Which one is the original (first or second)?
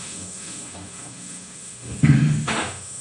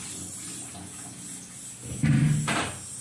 second